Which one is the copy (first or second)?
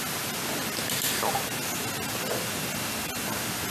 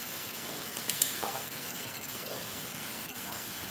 second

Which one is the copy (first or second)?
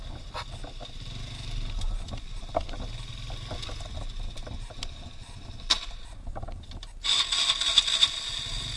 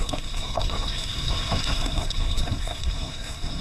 second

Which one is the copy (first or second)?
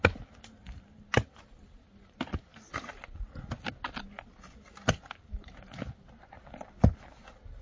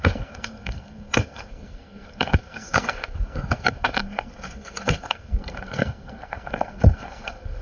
second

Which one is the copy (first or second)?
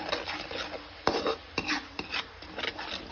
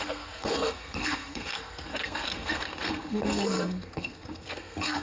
second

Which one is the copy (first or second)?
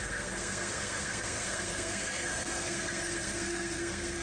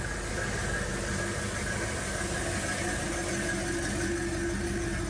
first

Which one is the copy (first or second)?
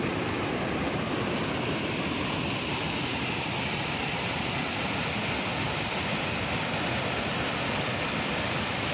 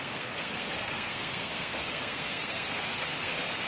second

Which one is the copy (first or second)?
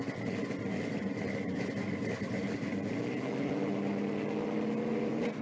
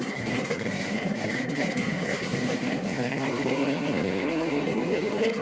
second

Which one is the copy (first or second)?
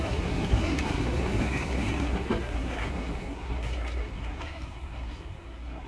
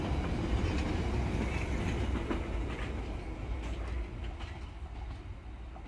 first